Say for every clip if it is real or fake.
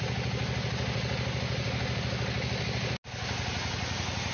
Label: real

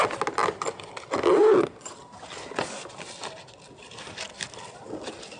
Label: real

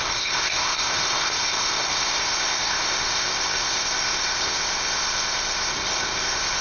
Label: fake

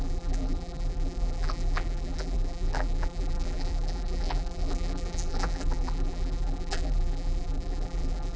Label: fake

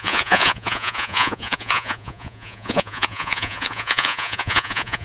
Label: fake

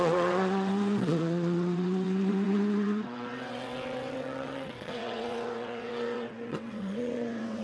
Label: fake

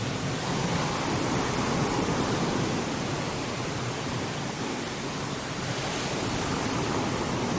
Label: fake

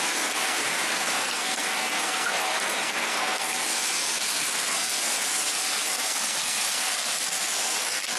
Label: fake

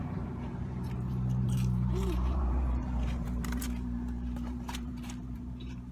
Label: fake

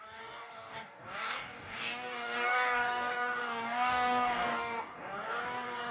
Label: fake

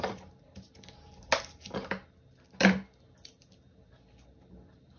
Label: real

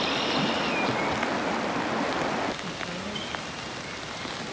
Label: real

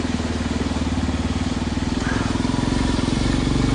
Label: real